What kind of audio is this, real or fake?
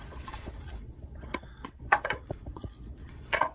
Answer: fake